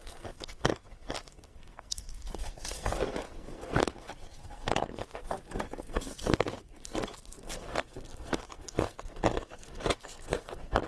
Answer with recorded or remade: remade